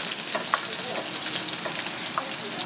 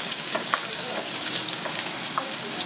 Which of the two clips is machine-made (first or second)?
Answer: second